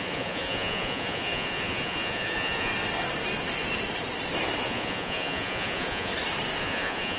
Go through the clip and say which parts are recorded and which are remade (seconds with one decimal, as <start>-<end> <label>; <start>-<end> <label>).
0.0-2.7 remade; 2.7-4.6 recorded; 4.6-6.1 remade; 6.1-6.6 recorded; 6.6-7.2 remade